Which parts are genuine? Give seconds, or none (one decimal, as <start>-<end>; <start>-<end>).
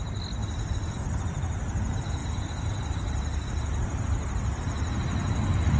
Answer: 0.0-5.8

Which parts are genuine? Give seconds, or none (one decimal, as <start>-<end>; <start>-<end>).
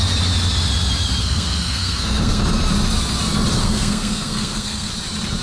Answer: 0.0-1.2; 2.4-3.6; 4.9-5.4